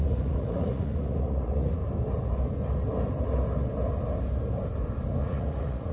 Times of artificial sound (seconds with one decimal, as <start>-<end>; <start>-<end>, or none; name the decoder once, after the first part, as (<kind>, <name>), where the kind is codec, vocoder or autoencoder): 0.0-1.8 (vocoder, Vocos); 5.2-5.9